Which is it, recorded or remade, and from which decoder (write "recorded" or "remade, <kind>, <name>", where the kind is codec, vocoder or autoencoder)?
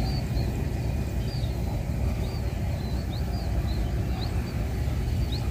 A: recorded